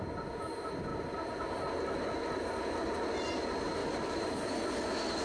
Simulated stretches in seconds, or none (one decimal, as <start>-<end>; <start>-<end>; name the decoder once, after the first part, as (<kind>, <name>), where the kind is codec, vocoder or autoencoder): 3.8-4.5 (vocoder, BigVGAN v2)